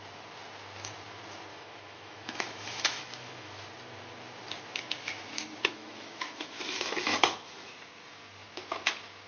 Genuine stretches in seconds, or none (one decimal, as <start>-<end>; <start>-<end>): 0.0-1.5; 3.6-5.7; 7.7-9.3